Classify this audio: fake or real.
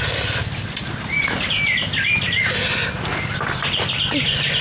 real